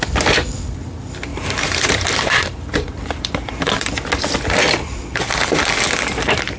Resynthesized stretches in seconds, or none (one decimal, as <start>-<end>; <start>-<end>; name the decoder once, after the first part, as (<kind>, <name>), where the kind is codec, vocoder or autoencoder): 1.3-4.1 (vocoder, BigVGAN v2)